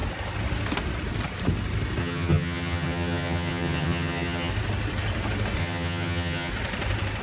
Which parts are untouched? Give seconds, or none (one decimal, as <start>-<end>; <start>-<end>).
0.0-2.0; 4.5-5.6; 6.5-7.2